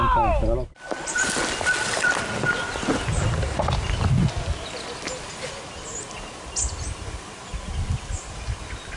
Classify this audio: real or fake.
real